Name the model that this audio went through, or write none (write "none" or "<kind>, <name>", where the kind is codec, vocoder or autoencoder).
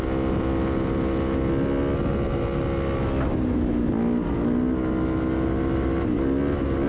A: none